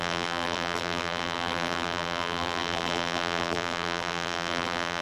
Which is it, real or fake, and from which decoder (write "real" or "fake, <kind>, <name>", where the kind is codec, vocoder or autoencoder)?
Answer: fake, vocoder, BigVGAN v2